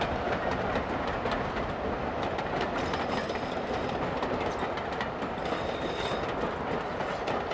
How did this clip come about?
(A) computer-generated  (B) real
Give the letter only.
B